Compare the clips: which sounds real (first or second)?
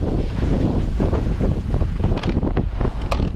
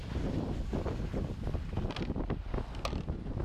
second